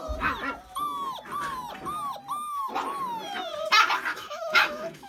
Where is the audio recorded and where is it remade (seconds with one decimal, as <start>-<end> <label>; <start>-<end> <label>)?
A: 0.0-4.1 recorded; 4.1-5.1 remade